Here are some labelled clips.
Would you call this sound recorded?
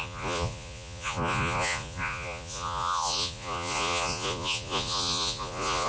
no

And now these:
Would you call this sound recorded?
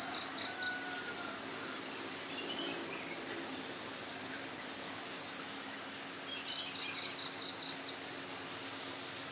yes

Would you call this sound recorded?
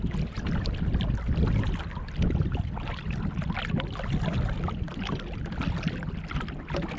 yes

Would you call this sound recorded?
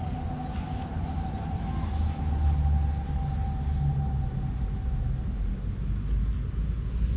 yes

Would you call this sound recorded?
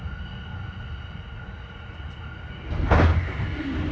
yes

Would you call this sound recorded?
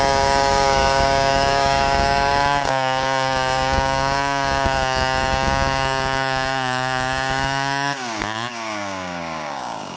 no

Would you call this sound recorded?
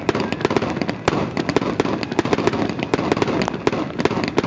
yes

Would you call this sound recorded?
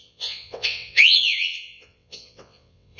no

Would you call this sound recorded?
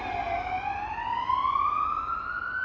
yes